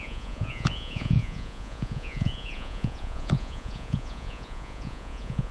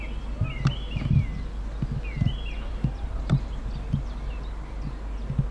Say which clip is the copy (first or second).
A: first